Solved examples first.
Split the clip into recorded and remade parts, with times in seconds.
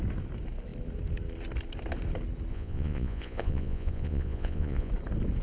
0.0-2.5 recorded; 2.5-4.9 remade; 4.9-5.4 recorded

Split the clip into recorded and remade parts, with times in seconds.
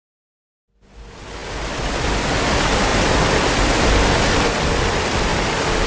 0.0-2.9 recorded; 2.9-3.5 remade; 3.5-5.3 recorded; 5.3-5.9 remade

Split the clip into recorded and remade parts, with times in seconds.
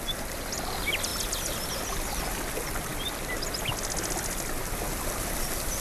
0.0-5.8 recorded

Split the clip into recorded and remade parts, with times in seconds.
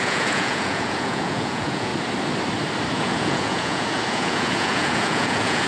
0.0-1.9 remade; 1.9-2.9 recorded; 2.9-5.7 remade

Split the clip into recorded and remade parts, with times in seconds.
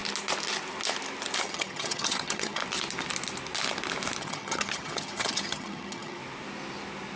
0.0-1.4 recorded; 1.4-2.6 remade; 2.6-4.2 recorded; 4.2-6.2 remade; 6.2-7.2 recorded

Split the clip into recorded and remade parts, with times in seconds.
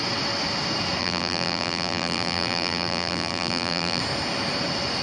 0.0-1.0 recorded; 1.0-4.0 remade; 4.0-5.0 recorded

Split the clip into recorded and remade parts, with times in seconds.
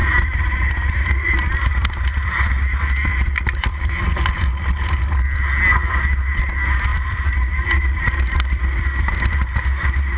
0.0-2.5 remade; 2.5-3.7 recorded; 3.7-4.4 remade; 4.4-6.9 recorded; 6.9-9.3 remade; 9.3-10.2 recorded